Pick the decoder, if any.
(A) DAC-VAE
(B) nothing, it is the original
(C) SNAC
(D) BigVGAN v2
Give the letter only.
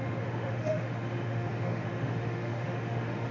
A